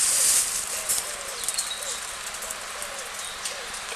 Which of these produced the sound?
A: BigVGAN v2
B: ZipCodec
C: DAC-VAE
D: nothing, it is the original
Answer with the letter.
D